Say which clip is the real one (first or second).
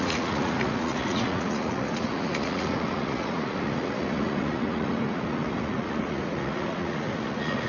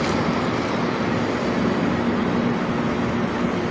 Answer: second